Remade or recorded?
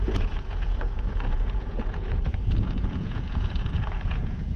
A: remade